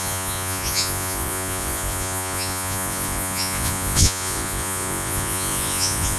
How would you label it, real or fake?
fake